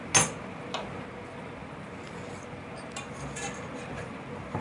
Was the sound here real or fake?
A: real